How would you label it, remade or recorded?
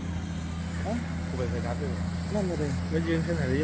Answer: recorded